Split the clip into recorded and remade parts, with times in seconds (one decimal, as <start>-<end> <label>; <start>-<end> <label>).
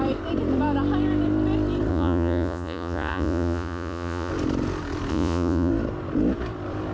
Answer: 0.0-1.9 recorded; 1.9-4.3 remade; 4.3-5.1 recorded; 5.1-5.7 remade; 5.7-6.9 recorded